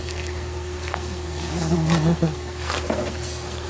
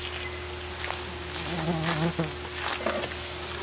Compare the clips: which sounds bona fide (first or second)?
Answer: second